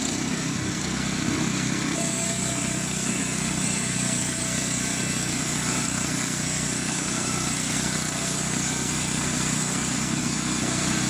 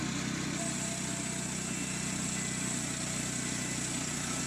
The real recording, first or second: second